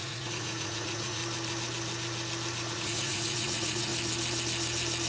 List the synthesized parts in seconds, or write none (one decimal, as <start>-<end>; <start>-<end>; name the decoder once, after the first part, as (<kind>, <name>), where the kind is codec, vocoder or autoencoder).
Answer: 0.0-1.2 (vocoder, Vocos); 2.7-3.9